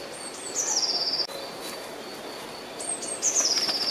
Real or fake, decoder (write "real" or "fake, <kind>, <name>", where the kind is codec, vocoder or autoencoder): real